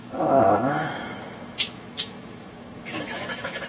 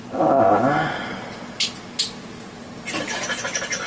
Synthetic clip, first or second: first